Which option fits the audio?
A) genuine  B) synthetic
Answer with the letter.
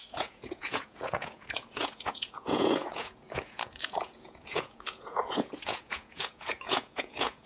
B